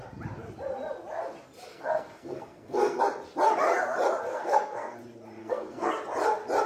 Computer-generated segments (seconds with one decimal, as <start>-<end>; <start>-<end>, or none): 1.7-3.0; 4.3-5.0; 5.4-5.9